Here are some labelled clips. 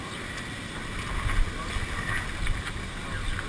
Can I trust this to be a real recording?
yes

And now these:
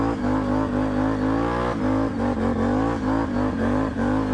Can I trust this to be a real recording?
yes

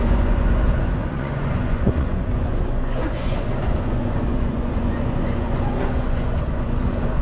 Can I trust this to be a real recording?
no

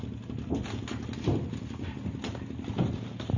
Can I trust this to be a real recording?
yes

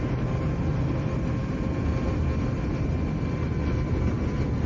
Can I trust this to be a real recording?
yes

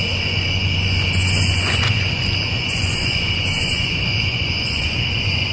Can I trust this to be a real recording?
no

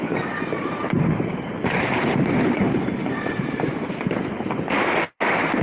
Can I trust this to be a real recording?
no